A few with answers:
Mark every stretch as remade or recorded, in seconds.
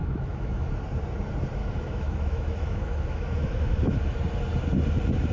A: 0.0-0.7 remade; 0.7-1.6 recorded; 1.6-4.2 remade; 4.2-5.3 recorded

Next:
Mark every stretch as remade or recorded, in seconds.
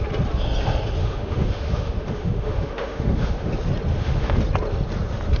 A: 0.0-1.0 recorded; 1.0-3.5 remade; 3.5-3.9 recorded; 3.9-4.4 remade; 4.4-5.4 recorded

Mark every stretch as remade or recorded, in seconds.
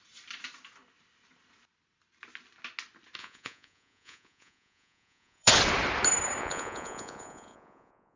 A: 0.0-3.2 recorded; 3.2-5.5 remade; 5.5-6.4 recorded; 6.4-8.2 remade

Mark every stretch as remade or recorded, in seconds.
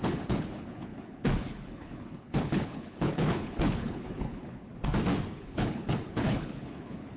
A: 0.0-4.7 remade; 4.7-5.3 recorded; 5.3-7.2 remade